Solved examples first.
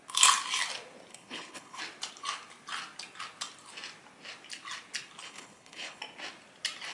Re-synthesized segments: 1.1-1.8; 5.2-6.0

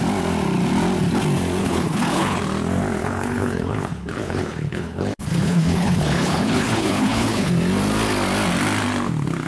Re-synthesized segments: 1.6-2.4; 3.0-7.5